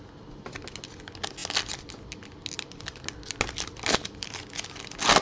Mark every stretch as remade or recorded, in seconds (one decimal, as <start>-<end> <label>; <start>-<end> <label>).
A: 0.0-5.2 recorded